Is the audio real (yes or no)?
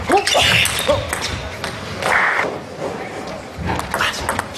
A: yes